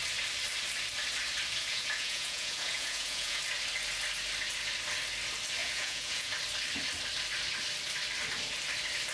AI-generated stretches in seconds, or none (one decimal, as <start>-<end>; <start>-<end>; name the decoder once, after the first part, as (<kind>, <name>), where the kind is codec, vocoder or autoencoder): 1.6-3.4 (vocoder, Vocos); 5.6-6.3